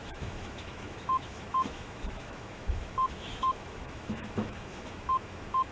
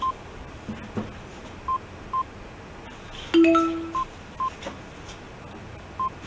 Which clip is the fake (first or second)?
first